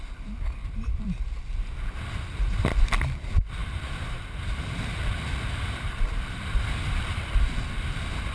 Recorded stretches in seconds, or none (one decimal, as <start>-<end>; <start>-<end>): 0.0-0.6; 1.4-3.6; 7.3-8.3